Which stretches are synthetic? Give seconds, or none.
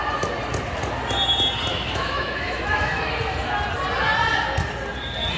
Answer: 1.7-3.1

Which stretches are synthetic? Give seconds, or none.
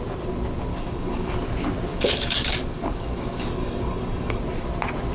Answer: 0.7-1.3; 1.9-4.4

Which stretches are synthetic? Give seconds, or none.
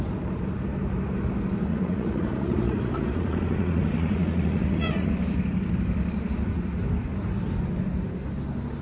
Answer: 1.7-5.1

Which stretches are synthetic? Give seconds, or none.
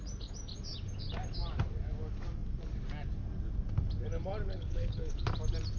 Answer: 4.5-5.2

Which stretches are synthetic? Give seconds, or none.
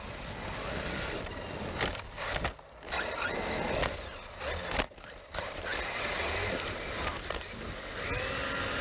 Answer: none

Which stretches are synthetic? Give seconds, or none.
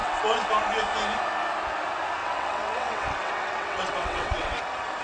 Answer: 0.0-0.5; 2.2-4.6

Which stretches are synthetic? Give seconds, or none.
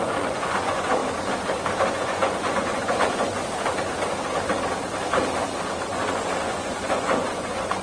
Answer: 0.0-1.0; 1.9-3.3; 5.9-7.8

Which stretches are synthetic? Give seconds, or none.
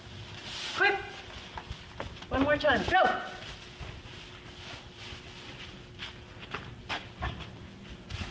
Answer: none